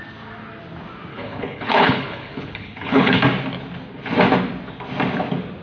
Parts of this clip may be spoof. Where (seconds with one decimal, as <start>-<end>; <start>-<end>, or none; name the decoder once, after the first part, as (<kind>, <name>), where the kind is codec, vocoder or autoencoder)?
1.1-3.2 (codec, HILCodec)